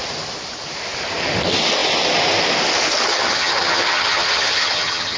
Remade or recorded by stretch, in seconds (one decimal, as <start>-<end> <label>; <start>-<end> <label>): 0.0-3.1 recorded; 3.1-5.2 remade